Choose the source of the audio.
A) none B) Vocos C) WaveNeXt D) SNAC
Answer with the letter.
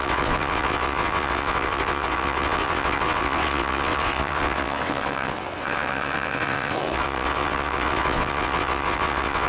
C